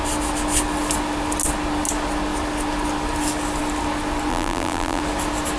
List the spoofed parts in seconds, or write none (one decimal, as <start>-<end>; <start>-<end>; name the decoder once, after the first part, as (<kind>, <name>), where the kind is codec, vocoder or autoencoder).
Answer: 4.3-5.0 (vocoder, BigVGAN v2)